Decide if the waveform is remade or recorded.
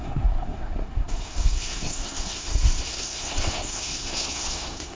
remade